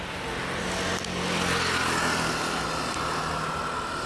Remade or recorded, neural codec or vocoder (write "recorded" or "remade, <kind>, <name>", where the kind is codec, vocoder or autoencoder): recorded